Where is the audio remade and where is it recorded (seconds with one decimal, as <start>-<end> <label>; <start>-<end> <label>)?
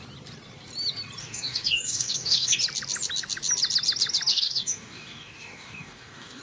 0.0-1.2 recorded; 1.2-2.6 remade; 2.6-4.3 recorded; 4.3-6.4 remade